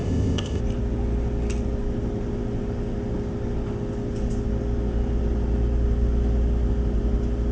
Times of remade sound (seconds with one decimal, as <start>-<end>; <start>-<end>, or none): 0.0-0.6